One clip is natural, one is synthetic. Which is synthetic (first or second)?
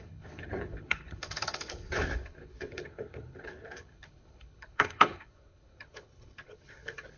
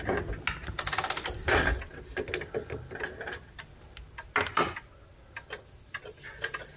first